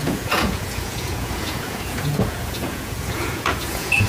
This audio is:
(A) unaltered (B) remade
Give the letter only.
B